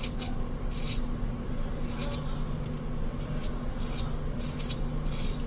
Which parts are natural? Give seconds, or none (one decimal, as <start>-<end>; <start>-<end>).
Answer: 0.0-5.5